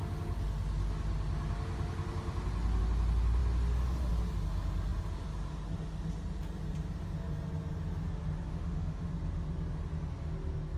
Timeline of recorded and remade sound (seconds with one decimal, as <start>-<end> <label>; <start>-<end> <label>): 0.0-8.5 recorded; 8.5-9.1 remade; 9.1-10.8 recorded